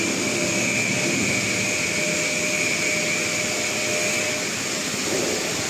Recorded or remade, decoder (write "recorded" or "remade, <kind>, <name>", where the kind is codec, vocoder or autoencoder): recorded